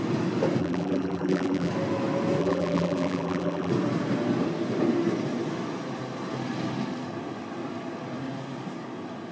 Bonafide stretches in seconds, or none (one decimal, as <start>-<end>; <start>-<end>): 0.0-0.6; 1.7-2.4; 3.7-9.3